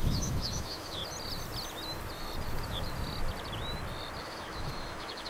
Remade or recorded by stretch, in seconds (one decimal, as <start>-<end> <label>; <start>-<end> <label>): 0.0-1.0 remade; 1.0-4.2 recorded; 4.2-5.3 remade